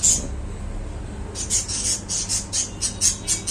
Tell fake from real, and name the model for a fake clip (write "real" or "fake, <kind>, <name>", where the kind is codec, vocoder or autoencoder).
real